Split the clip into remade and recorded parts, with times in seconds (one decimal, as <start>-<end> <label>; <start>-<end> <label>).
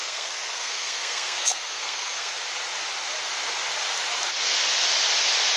0.0-2.3 remade; 2.3-5.6 recorded